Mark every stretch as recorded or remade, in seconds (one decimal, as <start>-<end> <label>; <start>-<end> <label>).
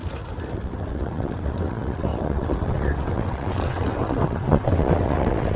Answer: 0.0-0.5 recorded; 0.5-5.6 remade